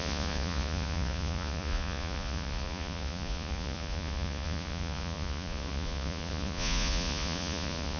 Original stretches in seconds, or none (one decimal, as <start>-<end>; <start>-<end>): none